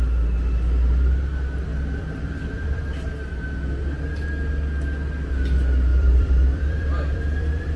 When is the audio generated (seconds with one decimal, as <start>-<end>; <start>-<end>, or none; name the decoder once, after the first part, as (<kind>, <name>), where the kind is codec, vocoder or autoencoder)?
1.7-2.8 (vocoder, BigVGAN v2); 5.9-7.8